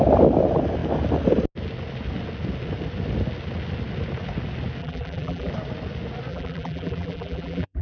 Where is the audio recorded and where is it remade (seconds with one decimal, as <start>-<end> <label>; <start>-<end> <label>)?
0.0-4.8 recorded; 4.8-5.5 remade; 5.5-6.3 recorded; 6.3-7.8 remade